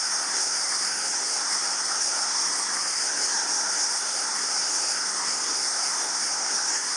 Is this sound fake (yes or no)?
yes